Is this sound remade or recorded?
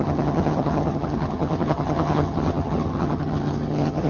remade